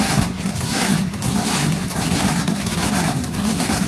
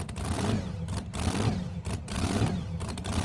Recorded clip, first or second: second